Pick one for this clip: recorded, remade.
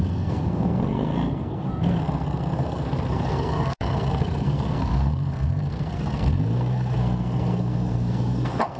remade